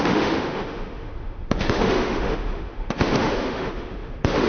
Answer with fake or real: fake